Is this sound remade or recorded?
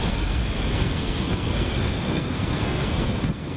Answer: remade